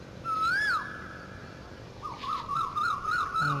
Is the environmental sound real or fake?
real